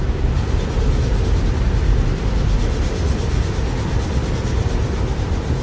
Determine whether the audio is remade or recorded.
recorded